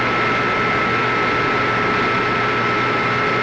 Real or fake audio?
real